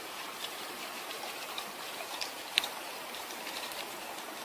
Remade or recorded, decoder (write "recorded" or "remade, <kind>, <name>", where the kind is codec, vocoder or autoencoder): remade, vocoder, BigVGAN v2